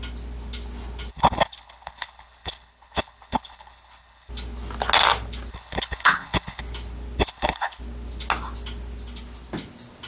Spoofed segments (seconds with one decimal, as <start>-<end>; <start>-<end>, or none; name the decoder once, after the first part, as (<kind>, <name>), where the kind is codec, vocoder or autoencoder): 1.1-4.3 (codec, HILCodec); 5.5-6.6; 7.2-7.8